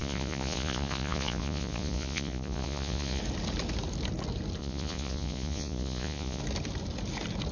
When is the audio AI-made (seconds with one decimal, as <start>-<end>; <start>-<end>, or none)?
0.0-3.2; 4.6-6.4